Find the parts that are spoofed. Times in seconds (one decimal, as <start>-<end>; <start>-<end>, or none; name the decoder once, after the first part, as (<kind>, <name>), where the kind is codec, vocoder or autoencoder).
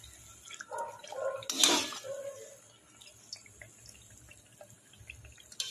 none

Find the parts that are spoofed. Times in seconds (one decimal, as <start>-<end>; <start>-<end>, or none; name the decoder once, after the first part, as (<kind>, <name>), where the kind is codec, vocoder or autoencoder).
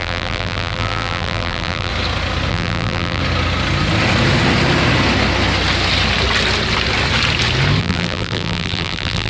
0.0-1.9 (vocoder, BigVGAN v2); 2.5-3.2; 7.8-9.3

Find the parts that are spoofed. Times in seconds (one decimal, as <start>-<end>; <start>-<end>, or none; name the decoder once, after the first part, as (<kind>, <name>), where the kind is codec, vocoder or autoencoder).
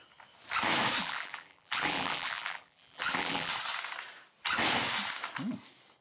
1.0-3.5 (vocoder, BigVGAN v2)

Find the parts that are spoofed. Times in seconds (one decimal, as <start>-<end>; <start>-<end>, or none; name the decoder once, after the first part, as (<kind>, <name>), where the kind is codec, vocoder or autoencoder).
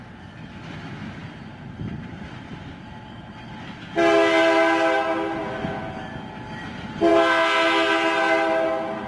1.2-3.9 (vocoder, BigVGAN v2)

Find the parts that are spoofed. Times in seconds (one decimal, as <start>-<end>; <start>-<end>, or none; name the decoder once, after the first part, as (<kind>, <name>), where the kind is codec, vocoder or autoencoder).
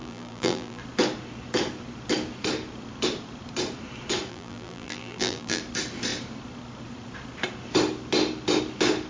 0.0-0.8 (vocoder, BigVGAN v2); 4.3-5.6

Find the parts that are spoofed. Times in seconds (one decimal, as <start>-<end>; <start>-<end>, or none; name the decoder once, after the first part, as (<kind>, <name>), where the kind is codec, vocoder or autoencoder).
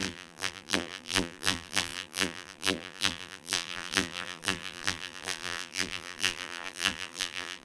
0.0-7.6 (vocoder, BigVGAN v2)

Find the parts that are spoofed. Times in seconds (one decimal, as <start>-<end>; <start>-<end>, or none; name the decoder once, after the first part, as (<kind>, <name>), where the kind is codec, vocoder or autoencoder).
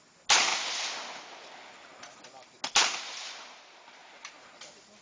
4.0-4.6 (vocoder, BigVGAN v2)